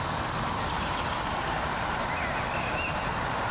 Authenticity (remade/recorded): recorded